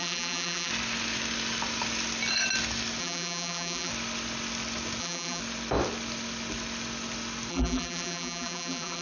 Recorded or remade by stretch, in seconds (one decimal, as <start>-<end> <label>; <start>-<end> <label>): 0.0-0.7 remade; 0.7-3.0 recorded; 3.0-3.9 remade; 3.9-5.0 recorded; 5.0-5.4 remade; 5.4-7.5 recorded; 7.5-9.0 remade